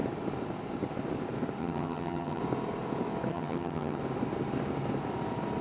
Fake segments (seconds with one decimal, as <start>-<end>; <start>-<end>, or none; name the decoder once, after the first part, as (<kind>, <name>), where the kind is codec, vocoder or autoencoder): 1.6-2.4 (vocoder, HiFi-GAN); 3.3-4.0